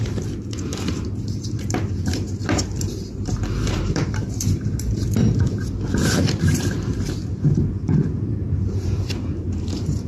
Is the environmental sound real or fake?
fake